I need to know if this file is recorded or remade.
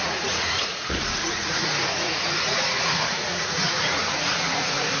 remade